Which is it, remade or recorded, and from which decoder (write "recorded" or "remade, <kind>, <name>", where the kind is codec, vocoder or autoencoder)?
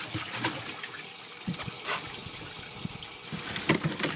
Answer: recorded